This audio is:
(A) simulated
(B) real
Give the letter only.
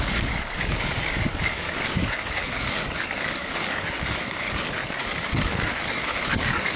A